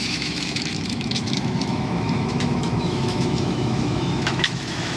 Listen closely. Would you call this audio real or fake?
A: fake